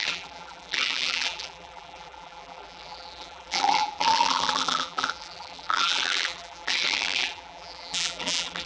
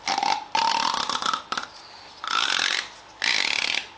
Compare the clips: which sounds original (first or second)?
second